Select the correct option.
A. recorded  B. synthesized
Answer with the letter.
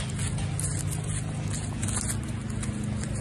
A